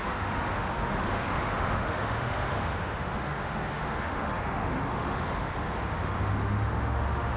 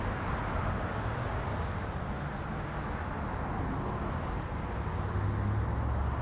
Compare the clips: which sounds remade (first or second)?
first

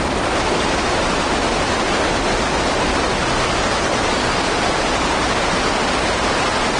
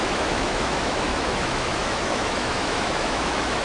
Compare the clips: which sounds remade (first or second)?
second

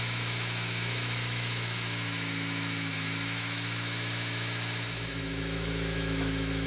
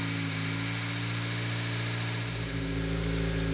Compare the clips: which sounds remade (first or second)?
first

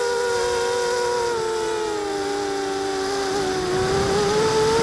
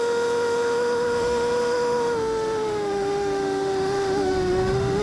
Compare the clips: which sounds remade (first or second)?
second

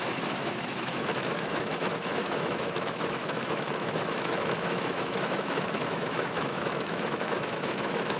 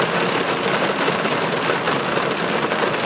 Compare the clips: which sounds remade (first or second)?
first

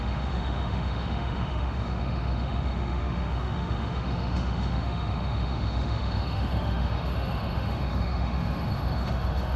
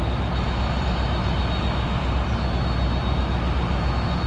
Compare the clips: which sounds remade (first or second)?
first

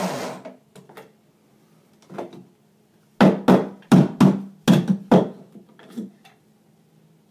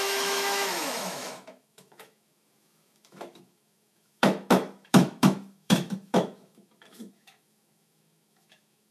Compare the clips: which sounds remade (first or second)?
second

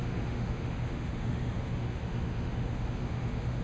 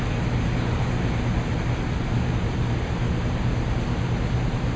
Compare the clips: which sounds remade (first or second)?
first